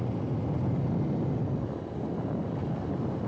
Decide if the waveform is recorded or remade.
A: recorded